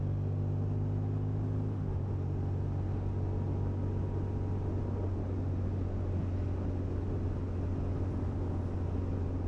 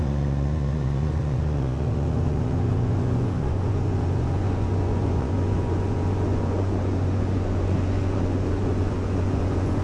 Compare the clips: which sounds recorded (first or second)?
first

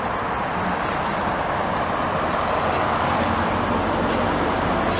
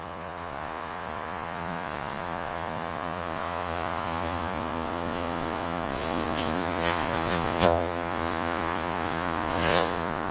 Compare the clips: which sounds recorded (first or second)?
first